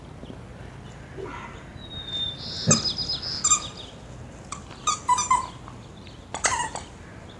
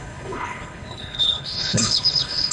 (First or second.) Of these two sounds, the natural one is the first